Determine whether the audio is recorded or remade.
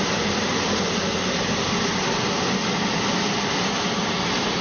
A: recorded